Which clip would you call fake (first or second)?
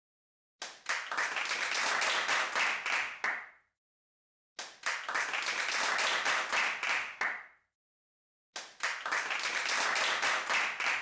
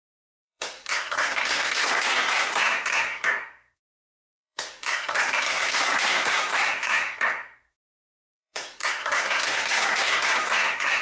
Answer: second